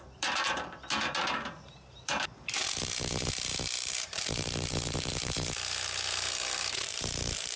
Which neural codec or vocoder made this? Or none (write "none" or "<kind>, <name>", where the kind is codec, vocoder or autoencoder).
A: vocoder, BigVGAN v2